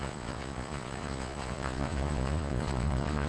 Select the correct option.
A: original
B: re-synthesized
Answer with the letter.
B